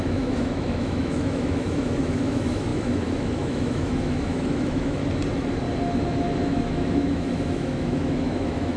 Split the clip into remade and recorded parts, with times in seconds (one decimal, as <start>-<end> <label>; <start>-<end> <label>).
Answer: 0.0-5.0 remade; 5.0-6.0 recorded; 6.0-8.8 remade